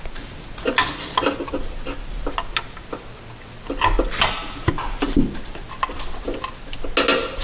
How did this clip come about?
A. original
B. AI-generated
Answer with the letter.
A